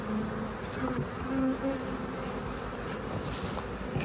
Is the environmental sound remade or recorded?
recorded